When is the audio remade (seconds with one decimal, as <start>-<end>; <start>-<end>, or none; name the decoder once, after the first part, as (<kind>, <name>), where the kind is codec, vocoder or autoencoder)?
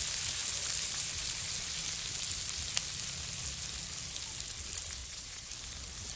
5.0-5.5 (vocoder, Vocos)